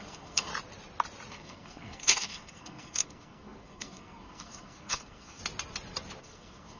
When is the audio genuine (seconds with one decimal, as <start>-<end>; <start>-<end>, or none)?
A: 0.5-1.3; 5.4-6.2